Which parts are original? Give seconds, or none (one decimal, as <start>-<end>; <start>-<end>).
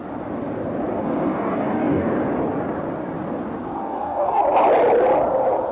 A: 0.0-1.0; 2.1-3.8; 4.4-5.7